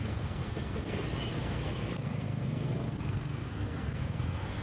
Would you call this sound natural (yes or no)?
no